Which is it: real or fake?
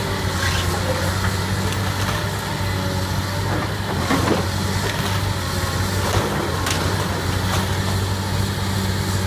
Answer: real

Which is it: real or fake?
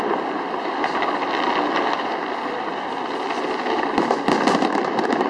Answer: real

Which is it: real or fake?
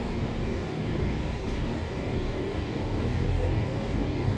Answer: fake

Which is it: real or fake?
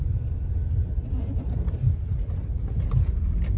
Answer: real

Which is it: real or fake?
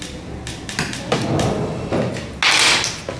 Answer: real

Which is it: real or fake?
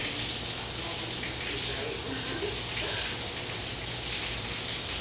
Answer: real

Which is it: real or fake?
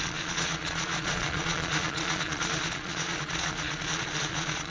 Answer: fake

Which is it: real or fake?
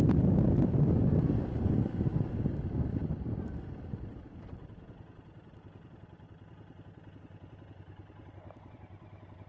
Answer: real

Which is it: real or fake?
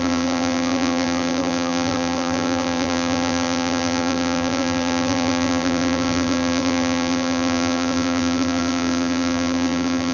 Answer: fake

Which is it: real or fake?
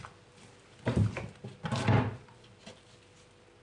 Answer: real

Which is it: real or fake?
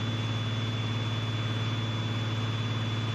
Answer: real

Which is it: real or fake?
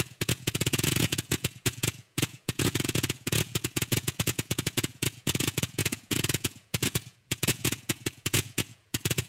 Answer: fake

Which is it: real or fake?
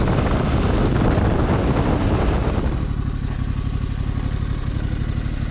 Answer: real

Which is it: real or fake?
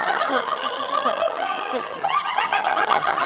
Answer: fake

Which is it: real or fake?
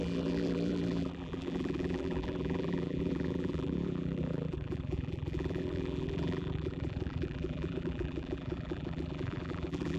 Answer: fake